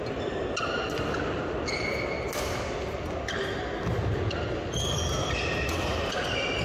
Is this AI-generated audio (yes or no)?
no